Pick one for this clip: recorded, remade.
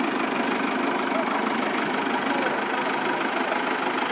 recorded